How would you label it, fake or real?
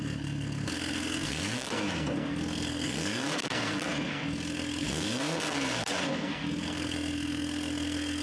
fake